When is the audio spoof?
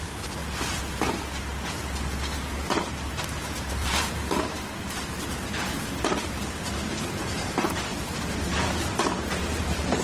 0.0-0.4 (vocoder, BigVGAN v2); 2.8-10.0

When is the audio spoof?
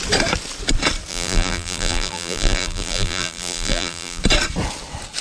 1.1-4.2 (vocoder, BigVGAN v2)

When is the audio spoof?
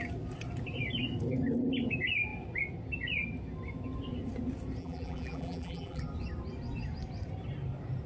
4.8-6.0 (vocoder, BigVGAN v2)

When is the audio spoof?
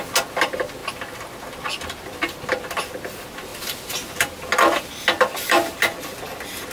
5.3-5.8 (vocoder, BigVGAN v2)